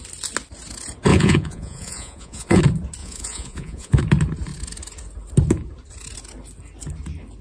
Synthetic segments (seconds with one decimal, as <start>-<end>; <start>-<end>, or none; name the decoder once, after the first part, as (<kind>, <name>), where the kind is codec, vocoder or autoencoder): 1.1-2.6 (vocoder, Vocos); 3.0-4.0

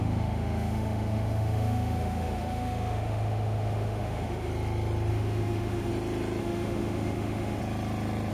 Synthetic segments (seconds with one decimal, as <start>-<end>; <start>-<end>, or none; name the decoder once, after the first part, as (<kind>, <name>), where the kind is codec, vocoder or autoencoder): 0.0-4.5 (autoencoder, DAC-VAE); 5.1-5.9; 6.4-7.6

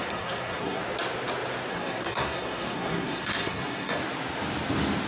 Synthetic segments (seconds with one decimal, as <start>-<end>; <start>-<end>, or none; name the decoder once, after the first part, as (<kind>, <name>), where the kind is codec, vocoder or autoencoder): 0.0-0.8 (codec, SNAC); 1.7-4.0

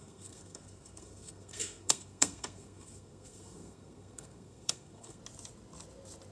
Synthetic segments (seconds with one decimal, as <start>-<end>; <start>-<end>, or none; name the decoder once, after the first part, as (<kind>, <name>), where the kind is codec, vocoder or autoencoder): 0.0-5.2 (codec, SNAC)